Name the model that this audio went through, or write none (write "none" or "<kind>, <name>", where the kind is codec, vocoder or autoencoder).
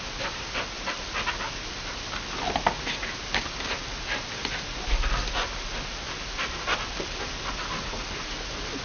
none